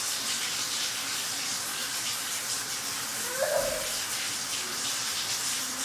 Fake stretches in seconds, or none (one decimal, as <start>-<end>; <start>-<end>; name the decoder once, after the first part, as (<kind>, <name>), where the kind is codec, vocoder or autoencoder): 1.8-2.7 (vocoder, BigVGAN v2)